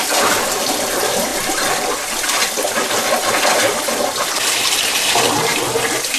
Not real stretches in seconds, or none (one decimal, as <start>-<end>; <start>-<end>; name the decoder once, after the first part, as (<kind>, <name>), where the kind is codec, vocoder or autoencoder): 0.0-1.3 (vocoder, BigVGAN v2); 4.3-5.5